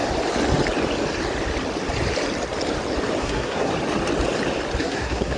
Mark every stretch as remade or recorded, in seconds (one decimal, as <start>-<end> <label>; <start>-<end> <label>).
0.0-3.2 recorded; 3.2-3.7 remade; 3.7-4.8 recorded; 4.8-5.4 remade